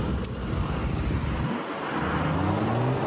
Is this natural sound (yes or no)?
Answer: yes